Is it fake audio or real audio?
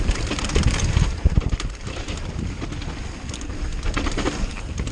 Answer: real